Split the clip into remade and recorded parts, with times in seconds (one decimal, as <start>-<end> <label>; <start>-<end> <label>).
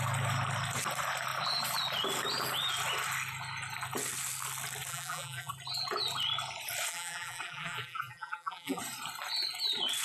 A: 0.0-4.9 recorded; 4.9-5.5 remade; 5.5-6.9 recorded; 6.9-8.8 remade; 8.8-10.0 recorded